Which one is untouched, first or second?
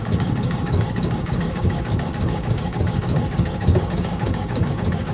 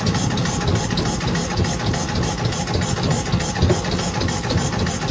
second